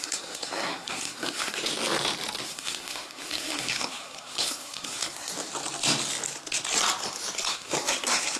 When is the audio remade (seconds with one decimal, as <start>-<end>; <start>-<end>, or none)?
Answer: 0.0-1.6; 2.5-5.3; 7.5-8.4